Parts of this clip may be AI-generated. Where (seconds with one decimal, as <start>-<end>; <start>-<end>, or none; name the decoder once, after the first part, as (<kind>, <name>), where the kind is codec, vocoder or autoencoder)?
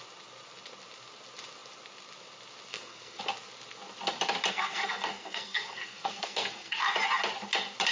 2.7-3.2 (codec, SNAC); 4.5-6.9